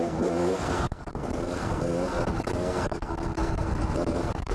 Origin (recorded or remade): remade